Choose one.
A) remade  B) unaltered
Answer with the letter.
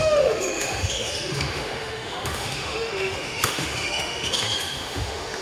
A